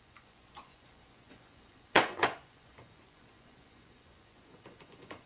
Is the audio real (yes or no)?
no